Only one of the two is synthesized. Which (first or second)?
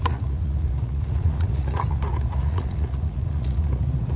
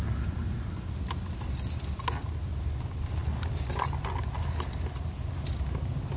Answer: first